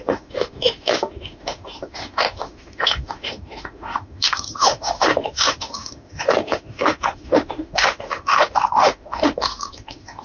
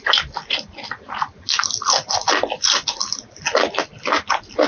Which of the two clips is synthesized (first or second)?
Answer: first